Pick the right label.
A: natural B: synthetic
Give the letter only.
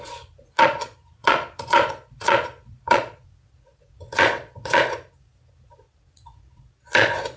B